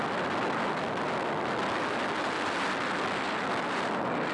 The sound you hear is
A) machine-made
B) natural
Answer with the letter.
B